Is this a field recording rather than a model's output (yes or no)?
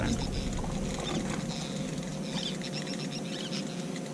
yes